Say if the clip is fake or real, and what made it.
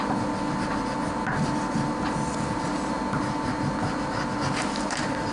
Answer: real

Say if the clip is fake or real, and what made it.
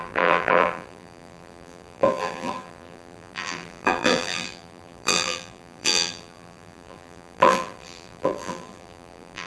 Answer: fake, vocoder, BigVGAN v2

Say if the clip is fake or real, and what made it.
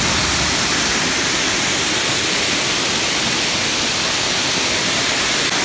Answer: real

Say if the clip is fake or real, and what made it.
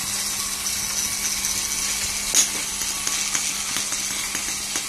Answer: real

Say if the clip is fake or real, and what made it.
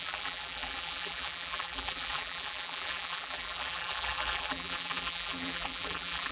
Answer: fake, vocoder, BigVGAN v2